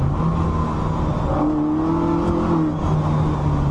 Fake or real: real